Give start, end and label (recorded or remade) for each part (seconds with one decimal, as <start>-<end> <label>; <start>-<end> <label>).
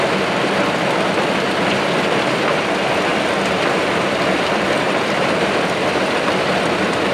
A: 0.0-3.1 recorded; 3.1-5.5 remade; 5.5-7.1 recorded